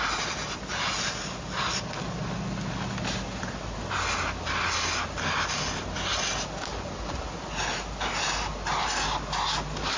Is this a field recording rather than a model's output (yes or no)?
yes